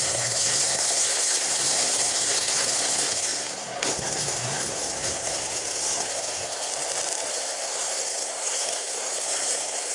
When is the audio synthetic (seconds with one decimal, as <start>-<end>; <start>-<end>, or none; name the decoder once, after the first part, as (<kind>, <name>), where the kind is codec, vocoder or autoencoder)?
0.0-6.7 (codec, SNAC); 7.3-9.9